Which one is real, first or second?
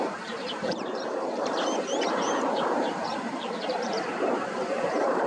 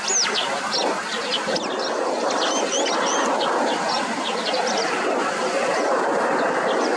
second